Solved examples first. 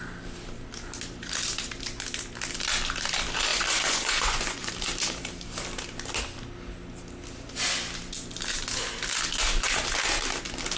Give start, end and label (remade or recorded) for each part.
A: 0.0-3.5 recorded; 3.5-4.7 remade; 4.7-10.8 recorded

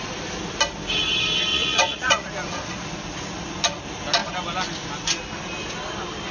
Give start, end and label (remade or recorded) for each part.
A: 0.0-1.5 recorded; 1.5-2.3 remade; 2.3-6.3 recorded

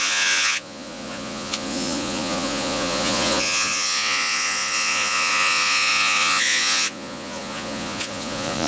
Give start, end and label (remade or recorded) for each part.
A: 0.0-8.7 remade

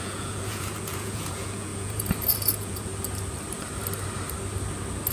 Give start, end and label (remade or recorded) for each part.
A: 0.0-2.9 remade; 2.9-5.1 recorded

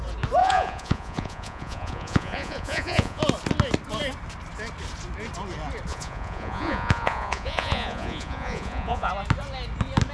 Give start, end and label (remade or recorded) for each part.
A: 0.0-0.4 recorded; 0.4-3.2 remade; 3.2-5.9 recorded; 5.9-9.1 remade; 9.1-10.1 recorded

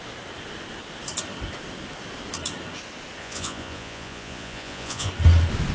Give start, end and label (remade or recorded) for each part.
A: 0.0-3.2 recorded; 3.2-5.1 remade; 5.1-5.7 recorded

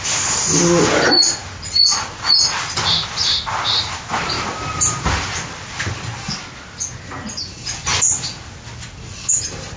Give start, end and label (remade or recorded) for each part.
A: 0.0-9.8 recorded

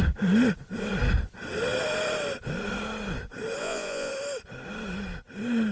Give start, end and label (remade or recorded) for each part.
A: 0.0-3.6 recorded; 3.6-4.1 remade; 4.1-5.7 recorded